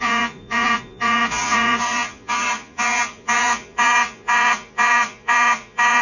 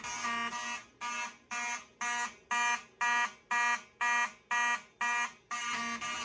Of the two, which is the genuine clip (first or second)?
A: second